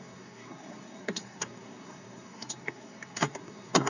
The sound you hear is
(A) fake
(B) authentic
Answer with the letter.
A